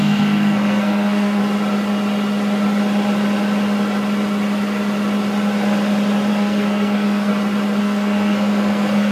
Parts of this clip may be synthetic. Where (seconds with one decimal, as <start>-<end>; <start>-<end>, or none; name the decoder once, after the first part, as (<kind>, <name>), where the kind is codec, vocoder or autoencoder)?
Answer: 0.0-1.4 (codec, SNAC); 6.3-7.3; 7.8-9.1

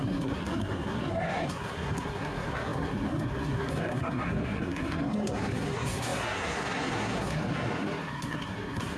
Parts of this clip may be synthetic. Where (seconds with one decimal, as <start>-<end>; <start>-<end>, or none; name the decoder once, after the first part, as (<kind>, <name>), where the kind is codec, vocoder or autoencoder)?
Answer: 0.0-9.0 (codec, SNAC)

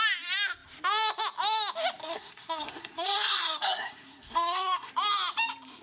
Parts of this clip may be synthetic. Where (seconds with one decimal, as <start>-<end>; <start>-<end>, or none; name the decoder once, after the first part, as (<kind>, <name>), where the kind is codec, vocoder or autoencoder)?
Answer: 2.0-4.9 (codec, SNAC)

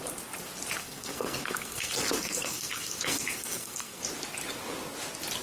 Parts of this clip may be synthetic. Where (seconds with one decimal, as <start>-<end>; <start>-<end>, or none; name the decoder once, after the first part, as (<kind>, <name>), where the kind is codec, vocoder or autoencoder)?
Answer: 0.8-4.0 (codec, SNAC)

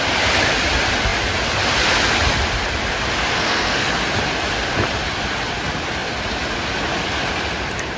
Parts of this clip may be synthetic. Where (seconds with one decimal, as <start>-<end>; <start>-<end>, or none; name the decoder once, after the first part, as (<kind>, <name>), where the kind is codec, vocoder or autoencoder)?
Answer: 3.3-3.9 (codec, SNAC)

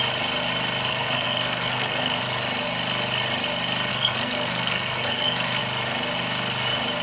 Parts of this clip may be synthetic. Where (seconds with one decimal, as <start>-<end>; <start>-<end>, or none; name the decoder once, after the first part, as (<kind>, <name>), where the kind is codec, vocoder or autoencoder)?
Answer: 0.9-2.2 (codec, SNAC); 3.9-5.6

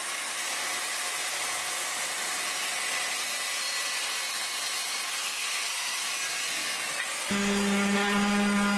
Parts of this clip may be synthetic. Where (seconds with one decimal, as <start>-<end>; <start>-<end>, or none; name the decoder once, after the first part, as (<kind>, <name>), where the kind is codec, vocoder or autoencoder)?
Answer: 5.1-6.0 (codec, SNAC)

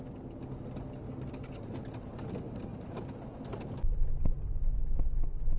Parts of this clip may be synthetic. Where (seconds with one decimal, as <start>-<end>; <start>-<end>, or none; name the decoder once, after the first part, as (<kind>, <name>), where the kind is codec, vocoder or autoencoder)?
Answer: none